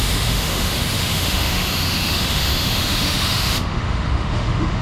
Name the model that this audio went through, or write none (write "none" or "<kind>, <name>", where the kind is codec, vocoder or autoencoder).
autoencoder, DAC-VAE